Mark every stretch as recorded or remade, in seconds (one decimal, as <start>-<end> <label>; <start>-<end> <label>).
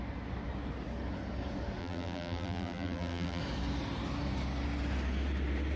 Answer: 0.0-1.8 recorded; 1.8-3.4 remade; 3.4-5.8 recorded